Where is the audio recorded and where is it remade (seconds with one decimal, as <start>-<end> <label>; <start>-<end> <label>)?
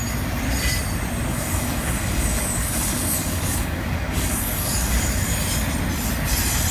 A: 0.0-1.3 recorded; 1.3-5.3 remade; 5.3-6.7 recorded